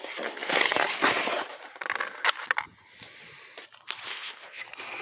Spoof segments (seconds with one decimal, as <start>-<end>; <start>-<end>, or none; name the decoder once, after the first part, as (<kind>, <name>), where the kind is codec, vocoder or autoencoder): 4.1-4.6 (codec, HILCodec)